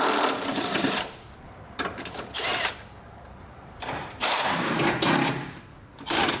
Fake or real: fake